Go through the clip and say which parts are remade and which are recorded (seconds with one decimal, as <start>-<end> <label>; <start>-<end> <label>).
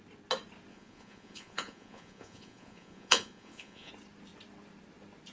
0.0-0.7 recorded; 0.7-3.9 remade; 3.9-5.3 recorded